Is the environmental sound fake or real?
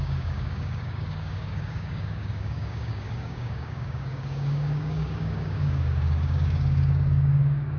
fake